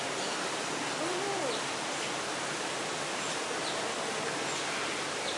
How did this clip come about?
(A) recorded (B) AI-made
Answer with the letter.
A